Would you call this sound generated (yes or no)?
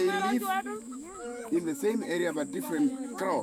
yes